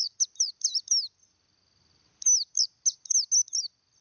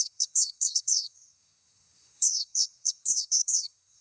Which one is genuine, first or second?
first